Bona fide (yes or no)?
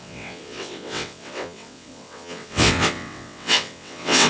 no